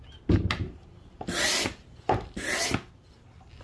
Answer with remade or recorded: recorded